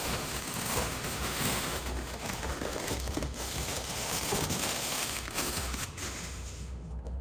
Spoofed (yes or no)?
yes